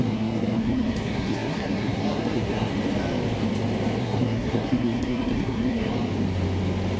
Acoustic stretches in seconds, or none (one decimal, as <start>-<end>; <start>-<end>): 2.7-4.0; 5.9-7.0